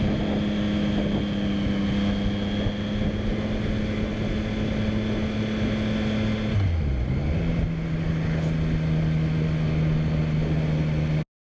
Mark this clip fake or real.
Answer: real